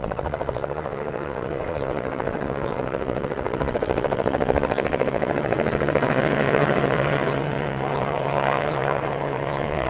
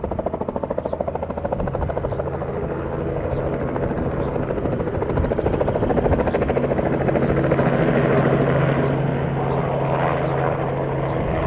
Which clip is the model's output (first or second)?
first